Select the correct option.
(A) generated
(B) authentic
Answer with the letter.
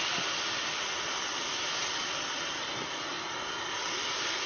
B